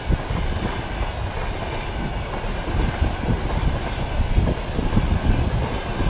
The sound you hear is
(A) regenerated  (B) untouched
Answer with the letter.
B